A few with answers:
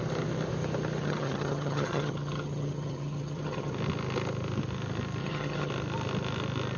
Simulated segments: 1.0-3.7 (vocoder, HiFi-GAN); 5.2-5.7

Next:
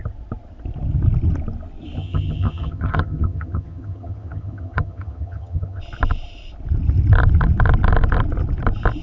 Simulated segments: 2.0-5.8 (vocoder, HiFi-GAN)